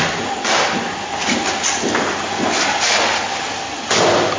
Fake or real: real